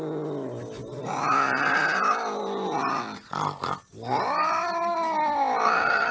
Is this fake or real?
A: real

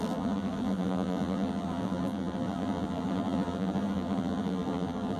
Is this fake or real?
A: fake